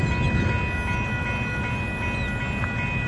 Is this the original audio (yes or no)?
yes